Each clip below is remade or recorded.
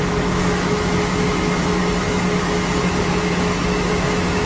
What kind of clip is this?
remade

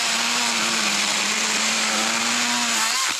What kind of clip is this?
recorded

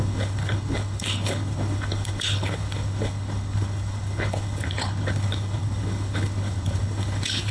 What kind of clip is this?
remade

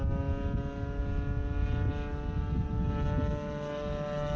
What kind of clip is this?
recorded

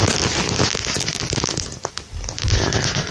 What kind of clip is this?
recorded